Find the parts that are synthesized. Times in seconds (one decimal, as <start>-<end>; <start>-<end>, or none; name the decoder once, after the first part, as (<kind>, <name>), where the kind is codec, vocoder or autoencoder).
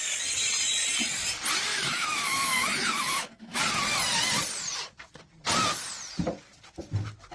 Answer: 1.7-3.6 (autoencoder, DAC-VAE)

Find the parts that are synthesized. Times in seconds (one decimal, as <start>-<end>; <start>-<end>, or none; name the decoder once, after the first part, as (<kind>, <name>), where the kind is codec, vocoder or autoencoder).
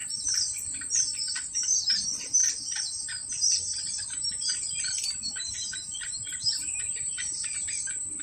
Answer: 0.0-5.6 (vocoder, BigVGAN v2); 6.4-8.2